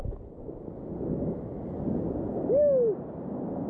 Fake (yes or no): no